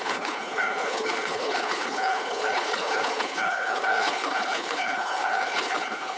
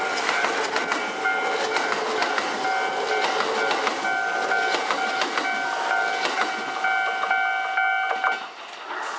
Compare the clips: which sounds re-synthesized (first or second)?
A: first